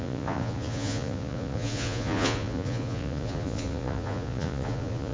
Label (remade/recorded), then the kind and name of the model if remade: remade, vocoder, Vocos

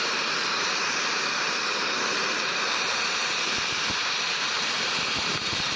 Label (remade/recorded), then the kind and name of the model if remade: remade, vocoder, BigVGAN v2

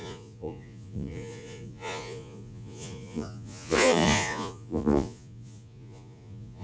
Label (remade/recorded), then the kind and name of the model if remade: remade, vocoder, Vocos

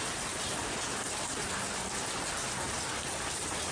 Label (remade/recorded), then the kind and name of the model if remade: recorded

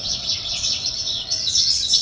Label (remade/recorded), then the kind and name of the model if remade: remade, vocoder, WaveNeXt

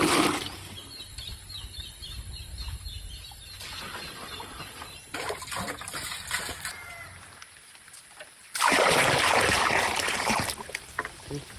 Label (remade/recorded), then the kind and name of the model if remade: recorded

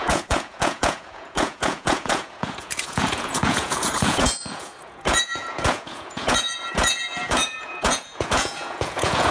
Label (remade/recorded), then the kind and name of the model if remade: remade, vocoder, Vocos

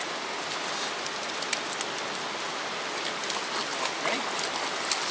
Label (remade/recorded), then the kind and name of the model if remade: recorded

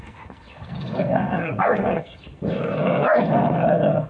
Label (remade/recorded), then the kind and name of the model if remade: remade, codec, SNAC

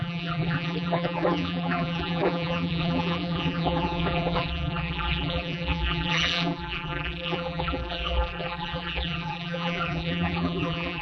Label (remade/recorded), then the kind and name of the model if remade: remade, vocoder, BigVGAN v2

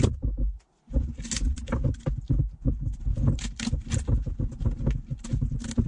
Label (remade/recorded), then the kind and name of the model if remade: recorded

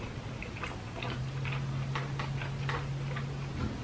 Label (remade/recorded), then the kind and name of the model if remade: recorded